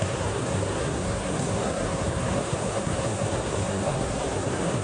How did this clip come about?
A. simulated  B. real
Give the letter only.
A